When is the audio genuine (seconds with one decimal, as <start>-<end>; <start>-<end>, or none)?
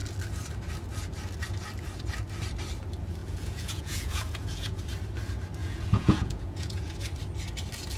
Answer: 0.0-3.2; 4.8-5.6; 6.9-8.0